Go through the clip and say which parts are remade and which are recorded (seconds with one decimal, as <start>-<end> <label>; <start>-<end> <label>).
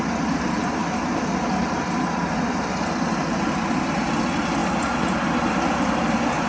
0.0-6.5 recorded